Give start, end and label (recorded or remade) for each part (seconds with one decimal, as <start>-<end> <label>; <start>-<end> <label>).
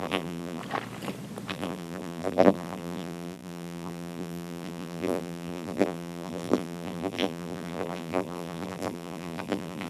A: 0.0-0.6 remade; 0.6-1.5 recorded; 1.5-9.9 remade